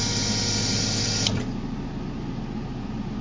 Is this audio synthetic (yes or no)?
no